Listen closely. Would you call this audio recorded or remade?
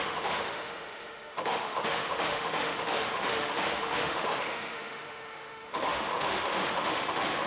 remade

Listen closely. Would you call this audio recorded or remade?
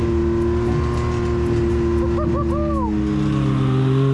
recorded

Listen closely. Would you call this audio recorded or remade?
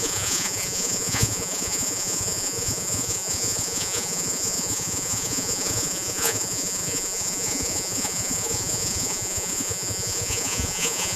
remade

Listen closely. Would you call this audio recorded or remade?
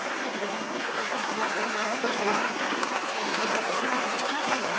remade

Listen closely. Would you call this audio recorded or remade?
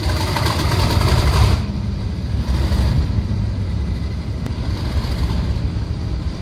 remade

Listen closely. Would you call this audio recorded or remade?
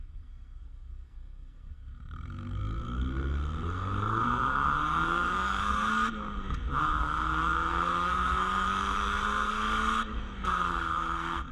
remade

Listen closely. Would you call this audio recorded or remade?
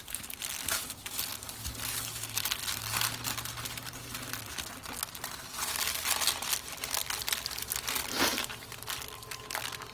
recorded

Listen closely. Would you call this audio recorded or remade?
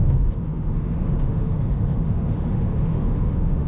remade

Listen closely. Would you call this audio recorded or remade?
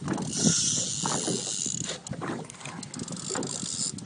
recorded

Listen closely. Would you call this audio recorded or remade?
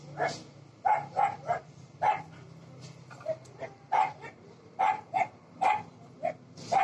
recorded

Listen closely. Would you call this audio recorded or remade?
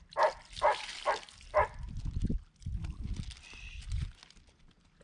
remade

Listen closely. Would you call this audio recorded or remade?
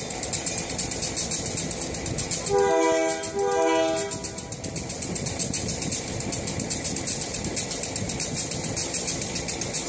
recorded